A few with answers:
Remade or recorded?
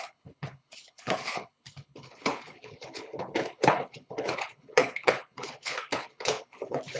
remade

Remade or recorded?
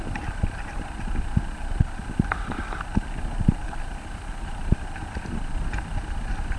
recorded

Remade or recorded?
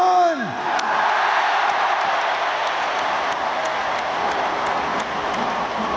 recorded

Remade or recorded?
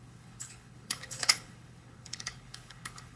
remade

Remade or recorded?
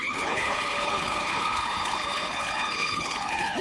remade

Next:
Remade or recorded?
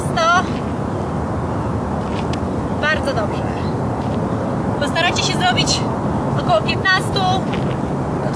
recorded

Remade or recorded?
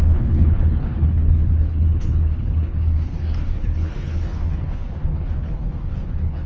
remade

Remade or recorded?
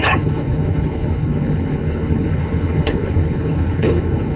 remade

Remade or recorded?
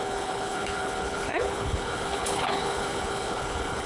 remade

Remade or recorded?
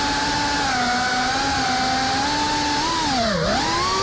recorded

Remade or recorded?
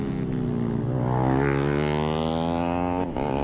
recorded